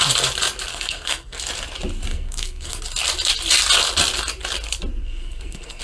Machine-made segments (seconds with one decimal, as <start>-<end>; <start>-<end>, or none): 0.7-1.4; 2.1-2.8; 5.0-5.8